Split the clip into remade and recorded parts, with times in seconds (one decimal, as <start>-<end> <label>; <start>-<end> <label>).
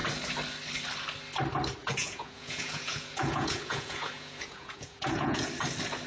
0.0-1.8 recorded; 1.8-5.5 remade; 5.5-6.1 recorded